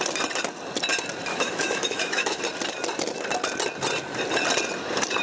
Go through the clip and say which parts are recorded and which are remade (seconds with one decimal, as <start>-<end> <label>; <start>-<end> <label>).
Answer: 0.0-1.3 recorded; 1.3-2.4 remade; 2.4-5.2 recorded